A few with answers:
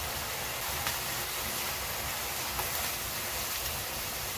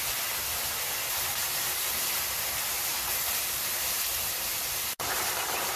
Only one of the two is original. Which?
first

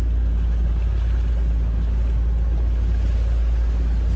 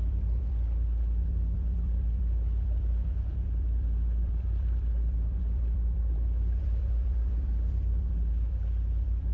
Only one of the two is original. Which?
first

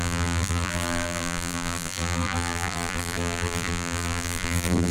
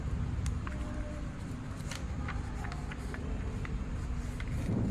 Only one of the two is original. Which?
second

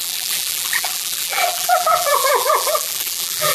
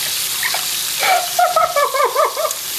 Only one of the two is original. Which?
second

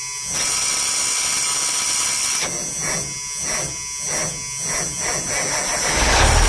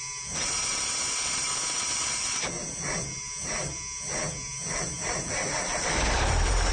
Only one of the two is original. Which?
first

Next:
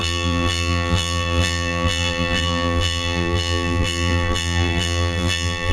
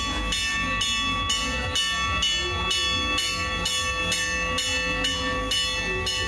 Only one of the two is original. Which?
second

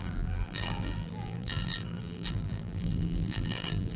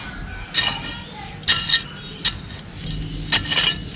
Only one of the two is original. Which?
second